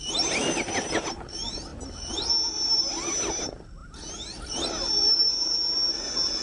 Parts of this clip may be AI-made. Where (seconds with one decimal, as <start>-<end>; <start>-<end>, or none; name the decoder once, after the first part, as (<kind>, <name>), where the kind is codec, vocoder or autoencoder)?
none